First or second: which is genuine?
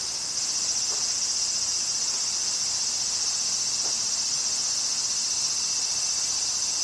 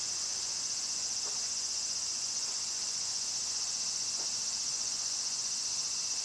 first